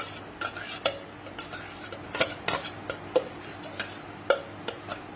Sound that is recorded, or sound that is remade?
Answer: recorded